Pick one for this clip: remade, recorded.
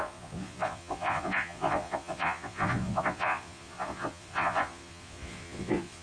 remade